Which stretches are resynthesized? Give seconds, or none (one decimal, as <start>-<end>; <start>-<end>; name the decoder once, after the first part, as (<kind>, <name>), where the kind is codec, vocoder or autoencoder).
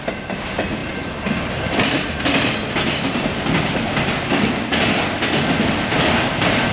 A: none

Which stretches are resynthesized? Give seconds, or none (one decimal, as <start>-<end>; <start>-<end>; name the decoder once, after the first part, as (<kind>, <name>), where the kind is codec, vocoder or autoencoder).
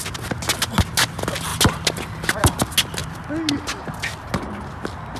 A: none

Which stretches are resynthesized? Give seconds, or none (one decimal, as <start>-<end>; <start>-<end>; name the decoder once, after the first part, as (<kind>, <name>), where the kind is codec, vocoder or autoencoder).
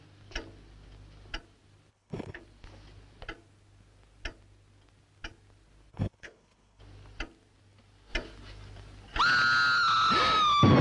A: 1.9-2.4 (codec, HILCodec); 5.9-6.8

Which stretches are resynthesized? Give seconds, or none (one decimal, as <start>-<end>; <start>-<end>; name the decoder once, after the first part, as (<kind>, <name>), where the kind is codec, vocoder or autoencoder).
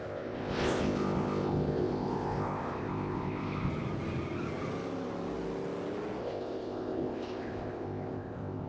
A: 0.0-3.7 (codec, ZipCodec); 6.2-8.7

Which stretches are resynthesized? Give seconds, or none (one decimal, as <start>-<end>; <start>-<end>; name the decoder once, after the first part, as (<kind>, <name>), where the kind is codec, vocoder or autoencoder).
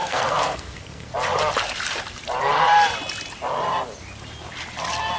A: 0.0-1.1 (codec, SNAC)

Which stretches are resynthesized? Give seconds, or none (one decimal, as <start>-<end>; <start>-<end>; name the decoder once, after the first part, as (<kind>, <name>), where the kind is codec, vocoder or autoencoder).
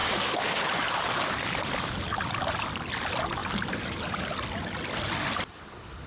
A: 0.0-0.6 (codec, DAC)